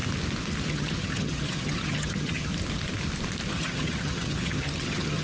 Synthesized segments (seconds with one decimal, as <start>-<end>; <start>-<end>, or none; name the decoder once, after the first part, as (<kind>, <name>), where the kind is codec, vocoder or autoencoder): 0.7-2.5 (vocoder, HiFi-GAN); 3.5-5.2